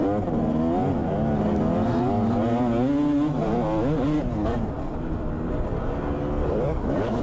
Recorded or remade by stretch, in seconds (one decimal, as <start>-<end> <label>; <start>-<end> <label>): 0.0-6.4 recorded; 6.4-7.2 remade